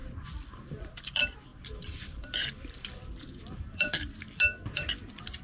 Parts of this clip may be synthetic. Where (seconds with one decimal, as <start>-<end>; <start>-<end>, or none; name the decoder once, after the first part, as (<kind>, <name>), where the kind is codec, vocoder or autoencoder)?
0.0-5.4 (vocoder, BigVGAN v2)